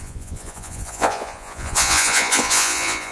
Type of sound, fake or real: fake